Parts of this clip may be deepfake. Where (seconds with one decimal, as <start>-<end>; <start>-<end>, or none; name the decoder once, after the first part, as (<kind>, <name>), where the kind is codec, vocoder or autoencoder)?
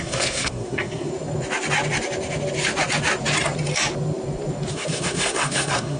0.0-1.1 (codec, SNAC); 4.7-6.0